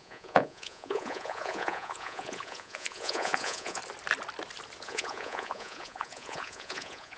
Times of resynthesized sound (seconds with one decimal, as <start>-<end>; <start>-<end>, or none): 0.0-3.8; 4.8-7.2